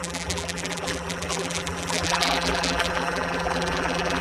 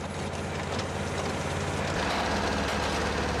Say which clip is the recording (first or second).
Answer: second